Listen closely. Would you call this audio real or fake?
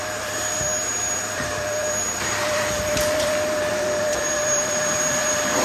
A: fake